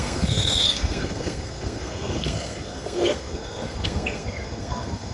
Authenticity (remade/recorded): remade